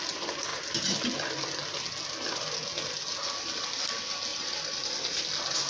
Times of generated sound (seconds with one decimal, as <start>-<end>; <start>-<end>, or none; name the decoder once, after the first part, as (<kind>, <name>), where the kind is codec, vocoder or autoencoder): 4.3-5.3 (vocoder, BigVGAN v2)